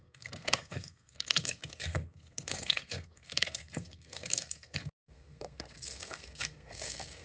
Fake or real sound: fake